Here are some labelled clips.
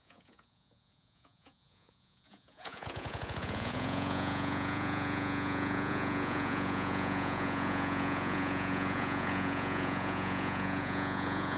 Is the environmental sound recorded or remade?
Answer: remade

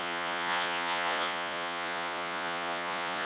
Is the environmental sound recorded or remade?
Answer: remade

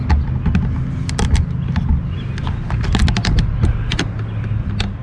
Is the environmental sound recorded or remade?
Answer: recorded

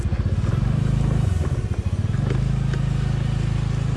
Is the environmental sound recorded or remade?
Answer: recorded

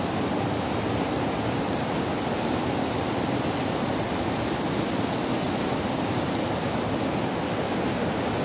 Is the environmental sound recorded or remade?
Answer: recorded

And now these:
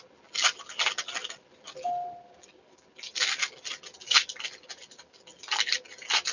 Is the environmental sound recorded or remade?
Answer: recorded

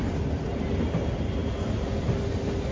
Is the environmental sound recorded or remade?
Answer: recorded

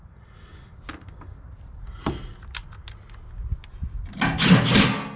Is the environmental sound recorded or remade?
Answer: recorded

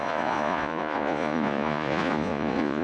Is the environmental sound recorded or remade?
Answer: remade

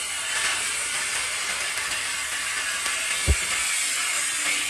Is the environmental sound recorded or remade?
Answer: recorded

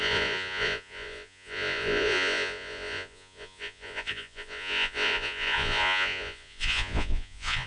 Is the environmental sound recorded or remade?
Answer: remade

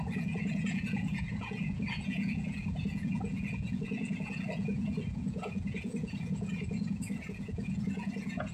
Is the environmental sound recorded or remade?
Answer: remade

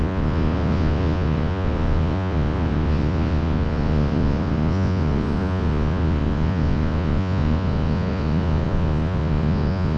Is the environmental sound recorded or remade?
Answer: remade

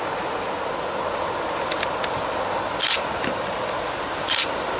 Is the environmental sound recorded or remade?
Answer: recorded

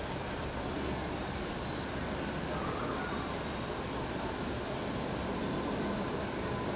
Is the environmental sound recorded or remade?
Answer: recorded